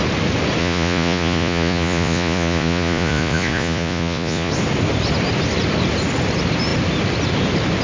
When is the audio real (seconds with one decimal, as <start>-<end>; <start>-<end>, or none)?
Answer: 0.0-0.6; 4.5-7.8